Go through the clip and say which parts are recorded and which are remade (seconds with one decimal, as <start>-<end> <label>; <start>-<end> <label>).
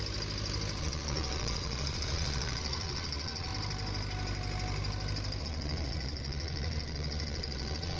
0.0-0.8 recorded; 0.8-3.5 remade; 3.5-5.4 recorded; 5.4-8.0 remade